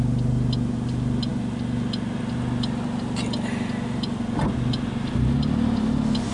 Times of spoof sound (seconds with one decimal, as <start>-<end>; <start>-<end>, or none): none